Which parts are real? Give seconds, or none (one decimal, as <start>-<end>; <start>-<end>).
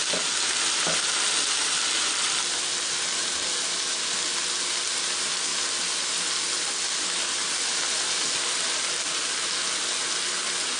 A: 0.0-10.8